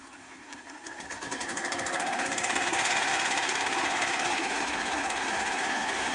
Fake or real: fake